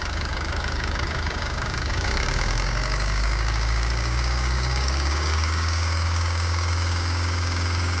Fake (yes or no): yes